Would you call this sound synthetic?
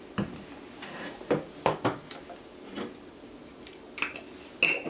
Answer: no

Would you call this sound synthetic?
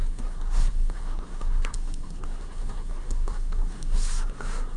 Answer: yes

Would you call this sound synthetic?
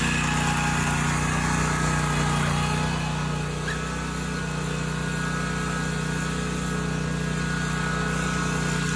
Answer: no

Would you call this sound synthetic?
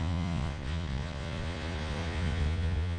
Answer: yes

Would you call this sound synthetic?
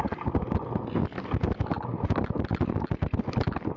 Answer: no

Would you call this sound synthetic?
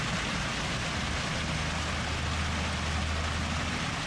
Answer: no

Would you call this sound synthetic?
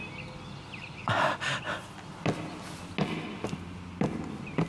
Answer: no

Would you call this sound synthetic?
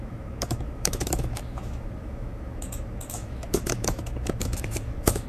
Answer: yes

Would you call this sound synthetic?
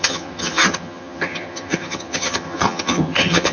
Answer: yes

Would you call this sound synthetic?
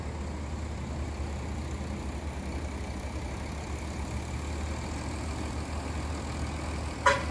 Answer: no